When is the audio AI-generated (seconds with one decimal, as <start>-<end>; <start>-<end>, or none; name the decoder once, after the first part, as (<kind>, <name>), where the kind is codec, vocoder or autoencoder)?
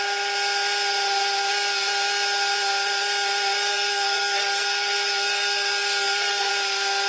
3.7-6.5 (codec, SNAC)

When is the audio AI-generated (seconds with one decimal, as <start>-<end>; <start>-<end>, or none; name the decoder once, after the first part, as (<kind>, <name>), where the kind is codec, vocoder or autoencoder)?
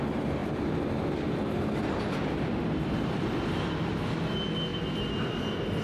none